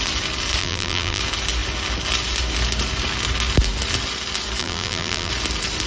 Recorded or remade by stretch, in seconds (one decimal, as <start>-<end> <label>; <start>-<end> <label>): 0.0-0.6 recorded; 0.6-1.2 remade; 1.2-4.6 recorded; 4.6-5.3 remade; 5.3-5.9 recorded